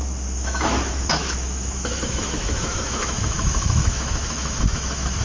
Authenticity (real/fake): fake